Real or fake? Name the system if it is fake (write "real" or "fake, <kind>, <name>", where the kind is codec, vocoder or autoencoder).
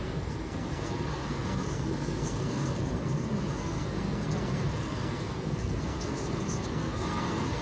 fake, codec, SNAC